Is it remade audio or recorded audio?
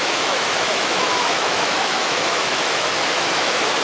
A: remade